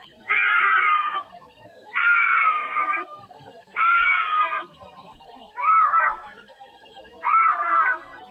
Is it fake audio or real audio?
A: fake